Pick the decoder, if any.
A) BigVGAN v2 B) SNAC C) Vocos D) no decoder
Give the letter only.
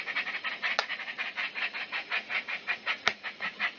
C